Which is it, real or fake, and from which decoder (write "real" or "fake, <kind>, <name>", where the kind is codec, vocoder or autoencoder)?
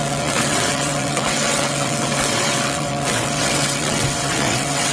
fake, vocoder, WaveNeXt